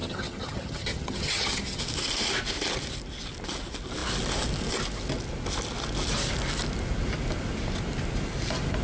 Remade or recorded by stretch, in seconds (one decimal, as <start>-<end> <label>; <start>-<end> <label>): 0.0-1.8 remade; 1.8-8.8 recorded